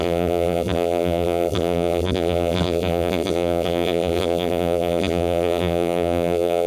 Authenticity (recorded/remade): remade